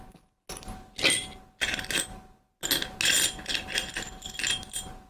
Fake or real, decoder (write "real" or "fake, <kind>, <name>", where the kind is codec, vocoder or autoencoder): real